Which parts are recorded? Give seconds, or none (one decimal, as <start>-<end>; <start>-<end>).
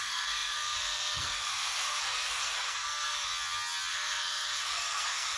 3.3-3.9